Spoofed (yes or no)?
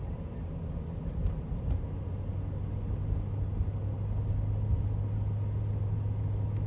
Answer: no